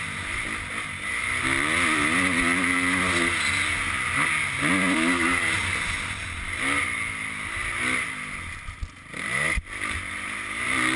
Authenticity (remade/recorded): recorded